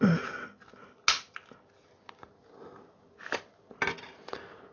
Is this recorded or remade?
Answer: recorded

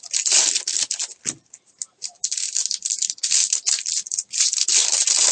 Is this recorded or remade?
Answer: recorded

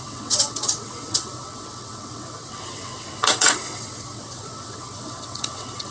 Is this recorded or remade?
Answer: remade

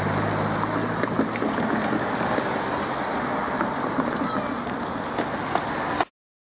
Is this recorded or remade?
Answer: recorded